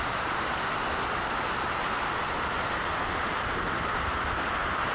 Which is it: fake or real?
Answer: real